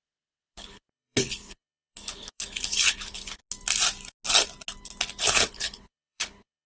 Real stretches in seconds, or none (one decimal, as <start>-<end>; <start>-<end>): 3.4-5.2